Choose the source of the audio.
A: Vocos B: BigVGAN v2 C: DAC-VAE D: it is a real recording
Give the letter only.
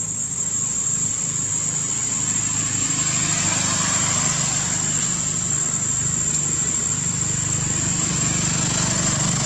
D